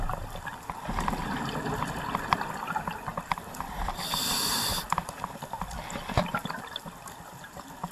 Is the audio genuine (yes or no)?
yes